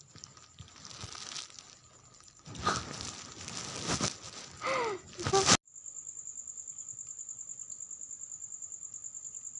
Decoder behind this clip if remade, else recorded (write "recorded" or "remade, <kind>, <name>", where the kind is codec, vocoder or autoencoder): recorded